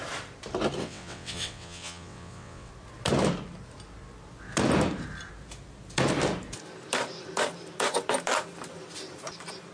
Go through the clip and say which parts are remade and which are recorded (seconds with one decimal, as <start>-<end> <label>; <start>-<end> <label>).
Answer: 0.0-0.8 recorded; 0.8-2.7 remade; 2.7-9.7 recorded